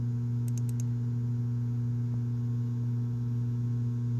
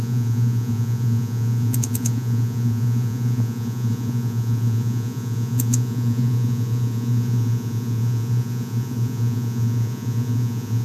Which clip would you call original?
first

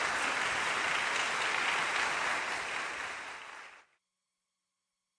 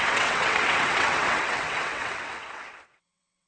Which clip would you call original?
first